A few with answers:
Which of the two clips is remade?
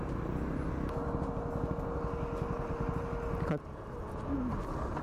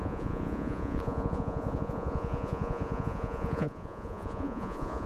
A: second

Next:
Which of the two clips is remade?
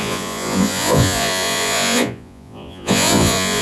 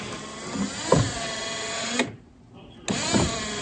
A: first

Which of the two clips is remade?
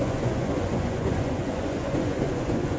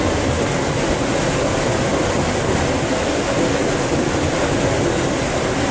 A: first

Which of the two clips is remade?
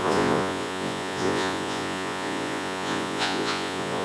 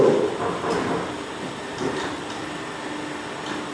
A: first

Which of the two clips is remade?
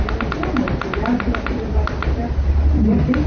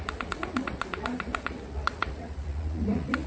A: second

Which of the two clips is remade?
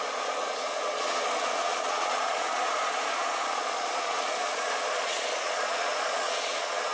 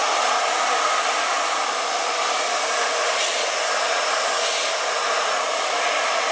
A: first